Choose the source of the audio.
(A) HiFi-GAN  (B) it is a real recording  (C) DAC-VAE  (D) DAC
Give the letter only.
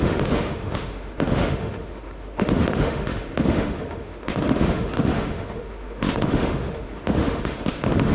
C